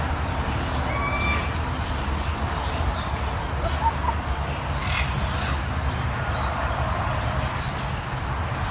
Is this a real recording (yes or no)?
yes